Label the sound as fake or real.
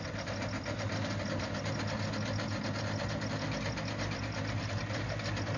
real